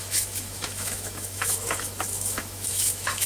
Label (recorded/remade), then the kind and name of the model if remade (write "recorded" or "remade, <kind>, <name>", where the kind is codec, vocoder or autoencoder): remade, autoencoder, DAC-VAE